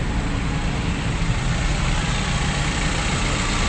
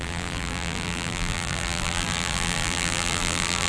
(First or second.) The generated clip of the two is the second